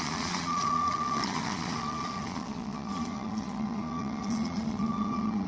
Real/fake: fake